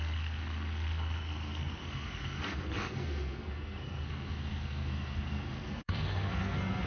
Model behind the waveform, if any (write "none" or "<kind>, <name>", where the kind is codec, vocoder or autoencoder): codec, SNAC